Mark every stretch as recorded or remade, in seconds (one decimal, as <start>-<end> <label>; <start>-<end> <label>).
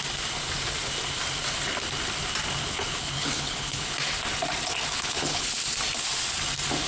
0.0-2.6 recorded; 2.6-3.9 remade; 3.9-4.9 recorded; 4.9-5.6 remade; 5.6-6.9 recorded